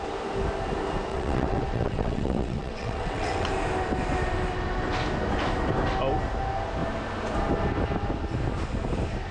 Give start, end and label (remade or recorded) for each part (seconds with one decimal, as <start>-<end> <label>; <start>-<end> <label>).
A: 0.0-1.1 recorded; 1.1-3.5 remade; 3.5-9.3 recorded